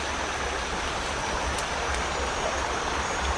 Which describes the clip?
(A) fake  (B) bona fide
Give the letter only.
B